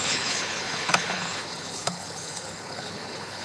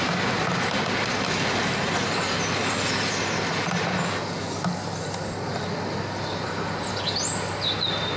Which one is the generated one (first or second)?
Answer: first